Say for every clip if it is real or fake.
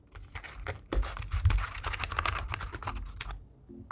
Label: real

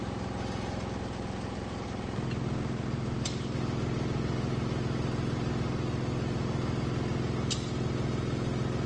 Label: real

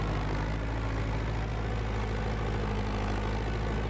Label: real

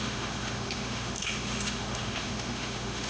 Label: fake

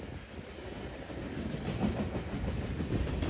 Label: real